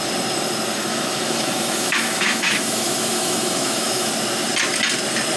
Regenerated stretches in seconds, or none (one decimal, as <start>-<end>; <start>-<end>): 0.9-4.1